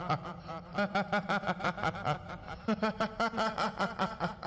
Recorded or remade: remade